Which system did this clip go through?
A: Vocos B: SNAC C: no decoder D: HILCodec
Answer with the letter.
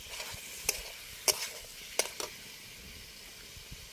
C